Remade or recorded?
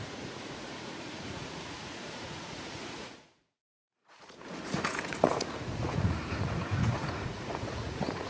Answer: remade